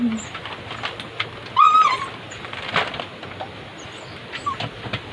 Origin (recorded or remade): recorded